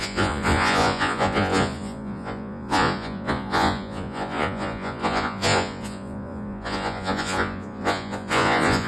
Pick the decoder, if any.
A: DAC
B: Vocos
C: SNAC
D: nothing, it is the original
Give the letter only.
B